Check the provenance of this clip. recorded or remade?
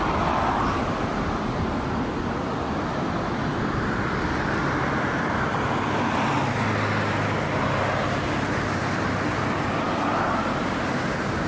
recorded